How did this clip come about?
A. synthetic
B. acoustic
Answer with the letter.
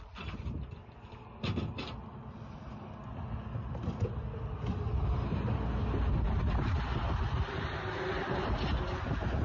B